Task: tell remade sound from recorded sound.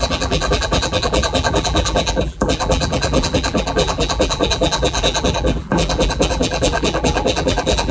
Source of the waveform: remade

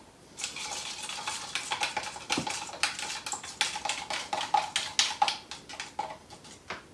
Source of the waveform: recorded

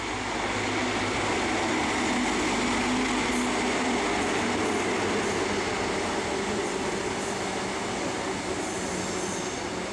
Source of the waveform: recorded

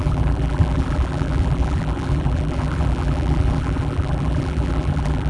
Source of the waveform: remade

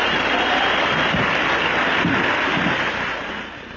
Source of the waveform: remade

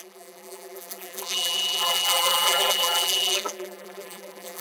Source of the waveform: remade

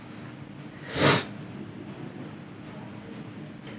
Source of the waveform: recorded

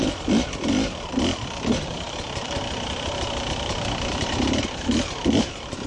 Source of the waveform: remade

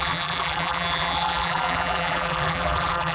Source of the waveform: remade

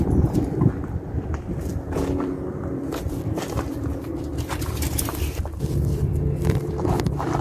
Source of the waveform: remade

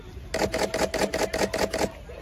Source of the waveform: recorded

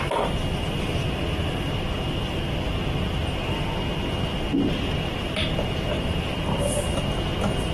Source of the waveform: recorded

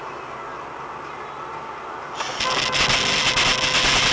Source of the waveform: recorded